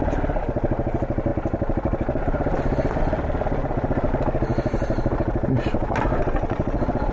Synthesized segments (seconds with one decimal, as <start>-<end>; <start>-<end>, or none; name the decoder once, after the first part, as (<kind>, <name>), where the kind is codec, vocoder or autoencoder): 6.2-7.1 (vocoder, WaveNeXt)